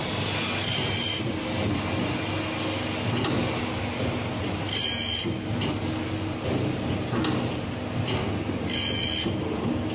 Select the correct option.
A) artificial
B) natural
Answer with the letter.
B